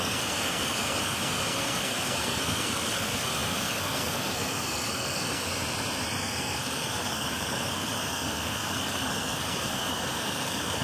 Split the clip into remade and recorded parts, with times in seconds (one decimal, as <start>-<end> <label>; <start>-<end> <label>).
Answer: 0.0-5.5 remade; 5.5-6.2 recorded; 6.2-10.8 remade